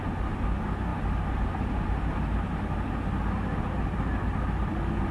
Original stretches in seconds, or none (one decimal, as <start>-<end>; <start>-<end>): 0.0-5.1